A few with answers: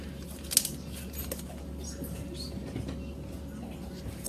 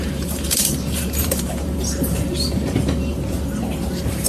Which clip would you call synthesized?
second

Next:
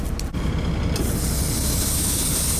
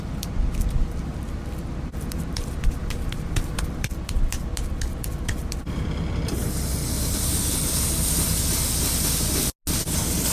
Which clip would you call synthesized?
first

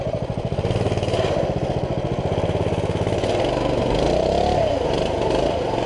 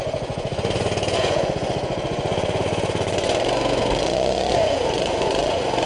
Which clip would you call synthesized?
second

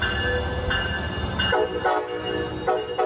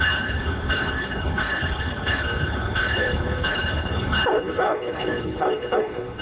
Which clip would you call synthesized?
second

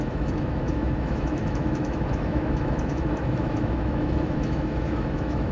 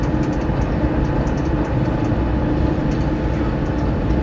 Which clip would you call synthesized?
first